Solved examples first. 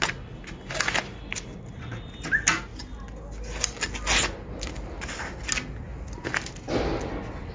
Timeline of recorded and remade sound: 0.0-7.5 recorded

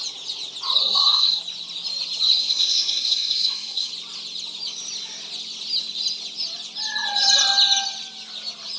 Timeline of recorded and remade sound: 0.0-0.8 recorded; 0.8-1.4 remade; 1.4-2.4 recorded; 2.4-3.9 remade; 3.9-8.8 recorded

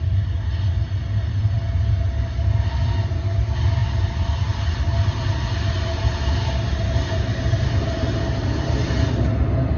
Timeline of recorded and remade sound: 0.0-3.8 recorded; 3.8-4.9 remade; 4.9-9.8 recorded

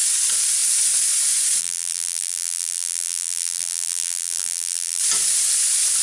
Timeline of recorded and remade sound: 0.0-1.6 recorded; 1.6-5.0 remade; 5.0-6.0 recorded

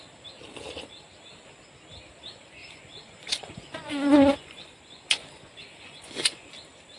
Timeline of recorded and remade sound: 0.0-2.6 recorded; 2.6-6.5 remade; 6.5-7.0 recorded

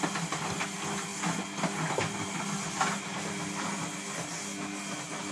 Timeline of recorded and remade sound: 0.0-5.3 recorded

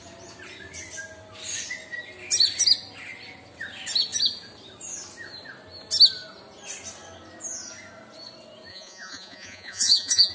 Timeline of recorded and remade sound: 0.0-8.7 recorded; 8.7-10.3 remade